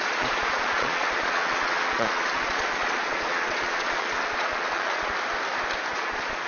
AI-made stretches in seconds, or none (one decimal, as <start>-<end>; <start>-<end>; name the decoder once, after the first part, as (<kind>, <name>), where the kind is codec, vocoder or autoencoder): 0.0-5.1 (vocoder, Vocos); 5.9-6.5